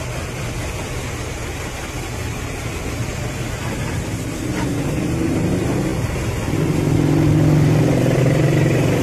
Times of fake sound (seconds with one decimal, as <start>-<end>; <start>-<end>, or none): 2.2-2.8